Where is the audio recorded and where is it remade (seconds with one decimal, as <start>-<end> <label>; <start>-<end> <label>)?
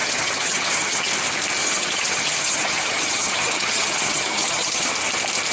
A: 0.0-1.1 remade; 1.1-1.6 recorded; 1.6-4.9 remade; 4.9-5.5 recorded